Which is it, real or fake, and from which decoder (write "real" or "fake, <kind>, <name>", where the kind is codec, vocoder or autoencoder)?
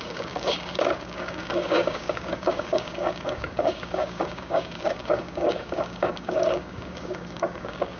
fake, codec, DAC